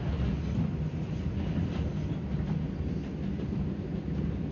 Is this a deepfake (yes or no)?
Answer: no